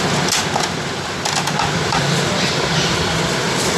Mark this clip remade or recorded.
recorded